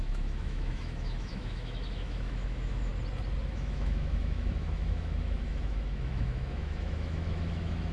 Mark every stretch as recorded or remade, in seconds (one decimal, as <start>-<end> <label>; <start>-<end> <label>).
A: 0.0-2.9 remade; 2.9-3.5 recorded; 3.5-7.9 remade